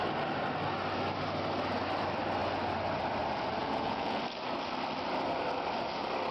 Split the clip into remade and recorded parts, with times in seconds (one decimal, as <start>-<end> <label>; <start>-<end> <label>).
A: 0.0-3.6 recorded; 3.6-4.2 remade; 4.2-6.3 recorded